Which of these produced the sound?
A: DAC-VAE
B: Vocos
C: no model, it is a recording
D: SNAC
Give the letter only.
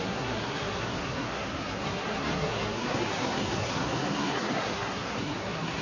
D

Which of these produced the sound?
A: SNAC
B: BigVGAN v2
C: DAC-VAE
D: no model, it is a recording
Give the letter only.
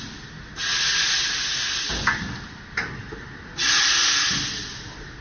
D